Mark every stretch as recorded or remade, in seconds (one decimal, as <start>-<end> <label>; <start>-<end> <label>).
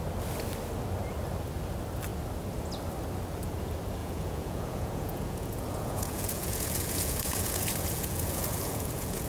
0.0-4.0 recorded; 4.0-9.3 remade